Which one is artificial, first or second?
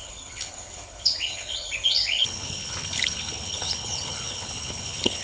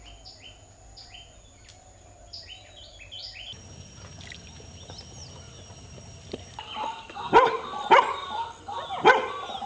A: first